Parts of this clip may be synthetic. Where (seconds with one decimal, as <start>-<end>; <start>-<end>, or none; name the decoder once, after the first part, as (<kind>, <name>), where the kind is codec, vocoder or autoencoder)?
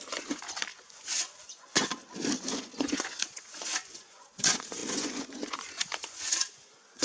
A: 0.0-1.9 (vocoder, Vocos); 2.5-7.0